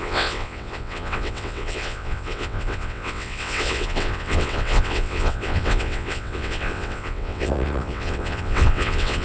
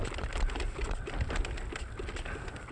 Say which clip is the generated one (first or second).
first